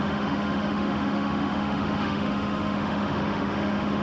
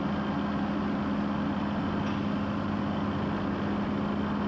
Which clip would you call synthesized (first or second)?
first